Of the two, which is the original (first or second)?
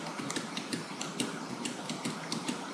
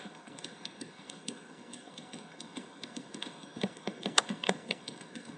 first